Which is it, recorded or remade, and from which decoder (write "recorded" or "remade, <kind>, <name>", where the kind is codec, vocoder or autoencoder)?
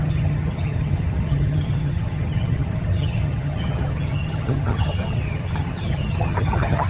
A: remade, vocoder, HiFi-GAN